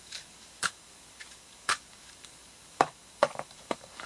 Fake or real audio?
fake